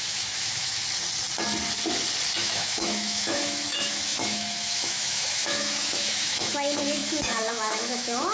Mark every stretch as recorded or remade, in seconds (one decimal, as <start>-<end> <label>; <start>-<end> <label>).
0.0-0.8 remade; 0.8-2.4 recorded; 2.4-8.3 remade

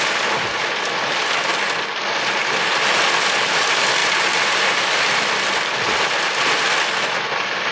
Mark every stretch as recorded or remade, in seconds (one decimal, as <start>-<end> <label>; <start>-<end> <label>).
0.0-7.7 recorded

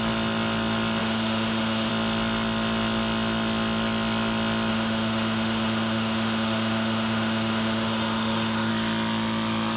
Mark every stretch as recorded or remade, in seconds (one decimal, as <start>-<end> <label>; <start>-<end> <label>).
0.0-1.0 recorded; 1.0-1.9 remade; 1.9-4.7 recorded; 4.7-8.7 remade; 8.7-9.8 recorded

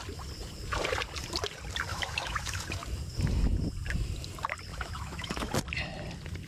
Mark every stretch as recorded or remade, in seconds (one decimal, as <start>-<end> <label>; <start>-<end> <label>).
0.0-1.9 recorded; 1.9-2.6 remade; 2.6-4.7 recorded; 4.7-5.5 remade; 5.5-6.5 recorded

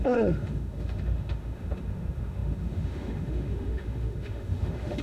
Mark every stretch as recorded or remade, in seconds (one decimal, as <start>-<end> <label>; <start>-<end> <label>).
0.0-5.0 remade

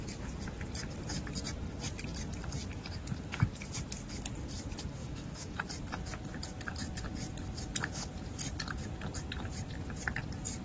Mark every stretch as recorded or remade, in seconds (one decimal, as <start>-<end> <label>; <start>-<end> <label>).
0.0-5.0 recorded; 5.0-5.6 remade; 5.6-10.6 recorded

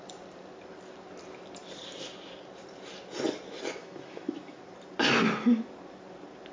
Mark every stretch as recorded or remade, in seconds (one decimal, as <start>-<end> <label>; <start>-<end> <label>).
0.0-3.8 recorded; 3.8-4.6 remade; 4.6-6.5 recorded